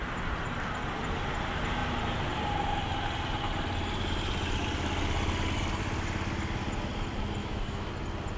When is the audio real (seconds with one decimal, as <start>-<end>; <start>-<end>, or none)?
0.0-7.4; 7.9-8.4